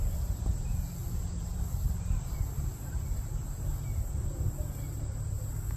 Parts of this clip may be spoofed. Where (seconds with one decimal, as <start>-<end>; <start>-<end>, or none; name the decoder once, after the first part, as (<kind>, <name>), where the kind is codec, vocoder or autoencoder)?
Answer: none